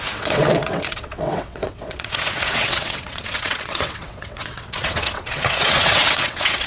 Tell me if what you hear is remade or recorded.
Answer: remade